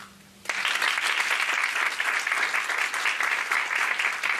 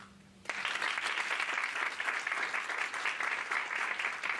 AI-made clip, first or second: second